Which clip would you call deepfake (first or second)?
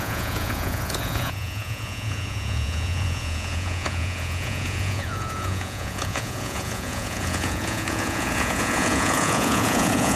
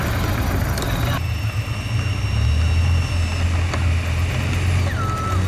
first